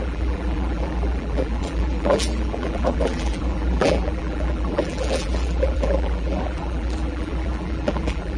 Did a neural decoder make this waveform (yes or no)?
yes